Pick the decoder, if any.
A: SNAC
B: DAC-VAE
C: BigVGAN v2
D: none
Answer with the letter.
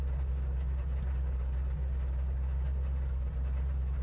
D